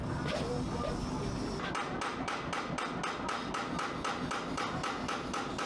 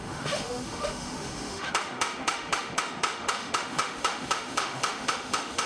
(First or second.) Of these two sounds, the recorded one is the first